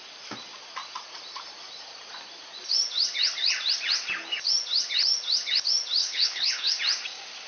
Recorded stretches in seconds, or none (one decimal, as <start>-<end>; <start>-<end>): 0.0-6.0; 6.8-7.5